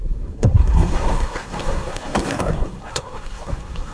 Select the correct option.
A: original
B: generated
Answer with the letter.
B